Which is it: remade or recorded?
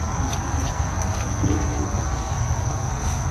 remade